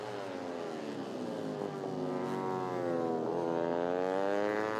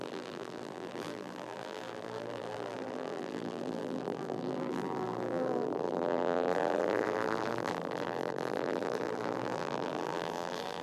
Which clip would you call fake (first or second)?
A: second